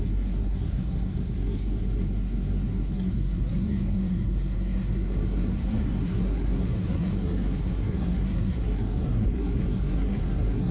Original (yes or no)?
no